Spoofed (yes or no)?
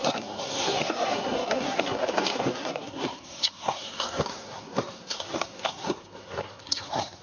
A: yes